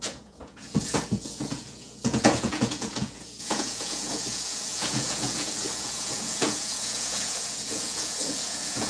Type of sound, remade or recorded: remade